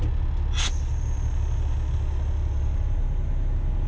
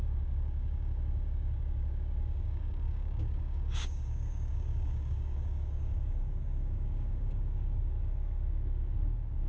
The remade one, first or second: second